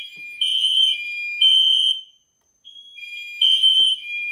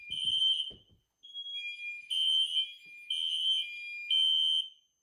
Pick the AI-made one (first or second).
first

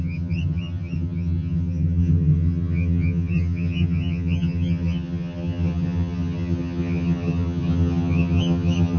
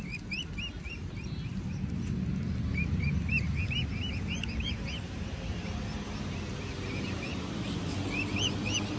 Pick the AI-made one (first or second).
first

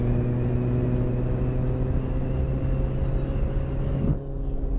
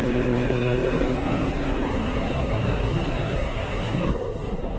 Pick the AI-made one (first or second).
second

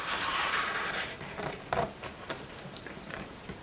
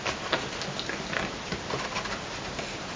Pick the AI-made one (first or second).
first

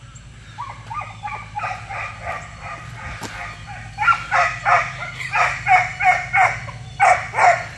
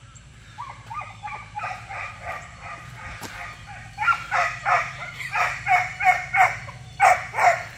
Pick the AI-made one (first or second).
second